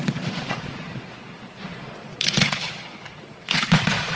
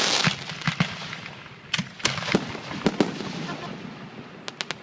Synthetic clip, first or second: first